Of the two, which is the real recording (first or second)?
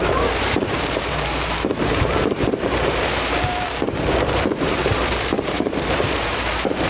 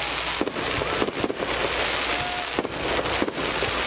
second